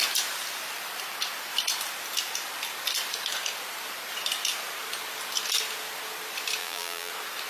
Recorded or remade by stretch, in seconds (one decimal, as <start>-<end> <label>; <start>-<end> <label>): 0.0-6.6 recorded; 6.6-7.1 remade; 7.1-7.5 recorded